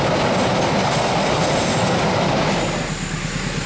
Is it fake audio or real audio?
real